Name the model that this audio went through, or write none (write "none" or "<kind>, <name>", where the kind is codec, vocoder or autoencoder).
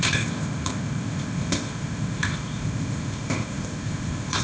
codec, ZipCodec